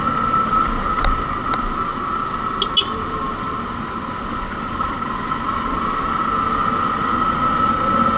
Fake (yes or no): no